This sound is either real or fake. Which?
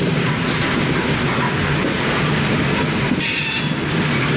real